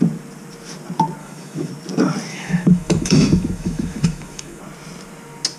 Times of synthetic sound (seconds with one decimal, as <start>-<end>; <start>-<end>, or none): 1.2-1.7; 2.3-4.6

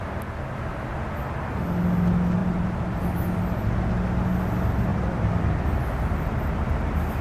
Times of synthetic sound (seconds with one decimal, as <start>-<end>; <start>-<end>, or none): 2.4-3.0; 4.9-5.4